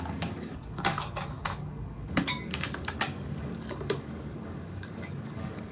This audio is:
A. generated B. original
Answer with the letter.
A